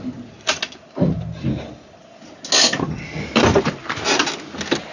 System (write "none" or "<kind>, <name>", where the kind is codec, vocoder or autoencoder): none